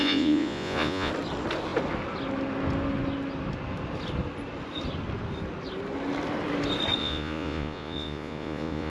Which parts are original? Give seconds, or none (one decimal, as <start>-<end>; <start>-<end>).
1.1-7.0